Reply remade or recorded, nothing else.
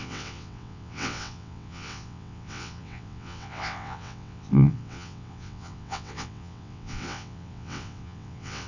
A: remade